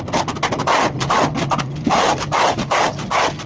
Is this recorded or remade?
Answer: recorded